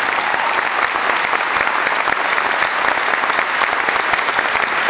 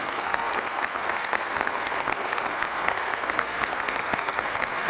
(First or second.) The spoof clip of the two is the second